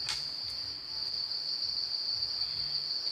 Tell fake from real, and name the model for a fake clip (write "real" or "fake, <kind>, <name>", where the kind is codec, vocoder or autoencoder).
real